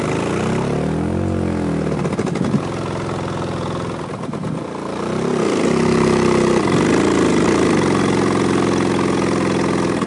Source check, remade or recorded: recorded